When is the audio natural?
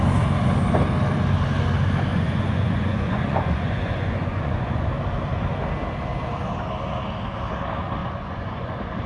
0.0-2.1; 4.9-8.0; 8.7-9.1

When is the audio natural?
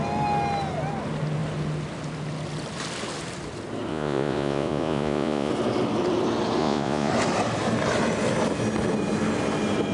0.0-3.9; 5.5-6.6; 7.1-9.9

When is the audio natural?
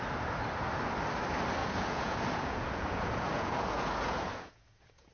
0.0-1.6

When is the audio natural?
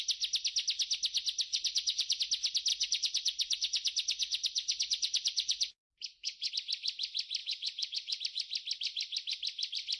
0.0-1.5; 2.2-2.7; 6.5-7.4; 8.2-10.0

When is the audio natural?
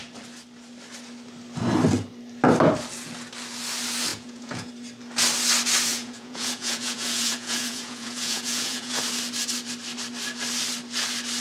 0.0-4.1; 4.7-5.9; 9.0-11.4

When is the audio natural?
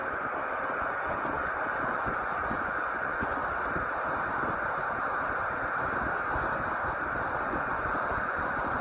3.4-7.3